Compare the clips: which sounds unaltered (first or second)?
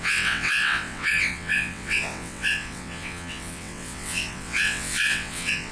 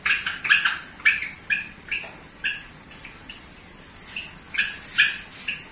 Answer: second